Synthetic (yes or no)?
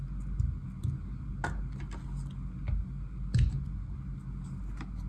no